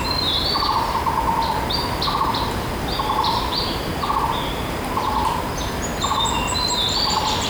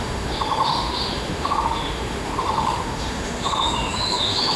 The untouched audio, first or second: first